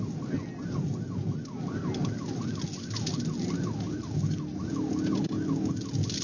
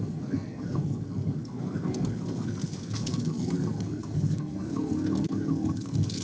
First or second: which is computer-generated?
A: second